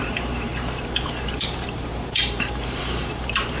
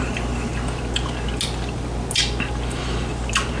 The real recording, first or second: second